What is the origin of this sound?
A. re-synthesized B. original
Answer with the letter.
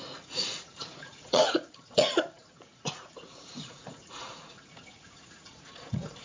A